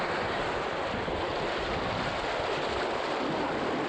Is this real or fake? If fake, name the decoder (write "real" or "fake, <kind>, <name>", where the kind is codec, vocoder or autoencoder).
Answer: real